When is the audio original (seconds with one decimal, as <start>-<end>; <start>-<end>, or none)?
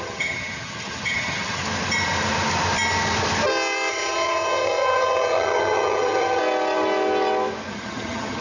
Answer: 1.6-3.9; 6.4-7.7